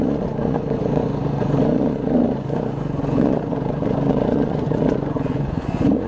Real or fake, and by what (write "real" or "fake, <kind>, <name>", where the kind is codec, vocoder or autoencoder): fake, vocoder, Vocos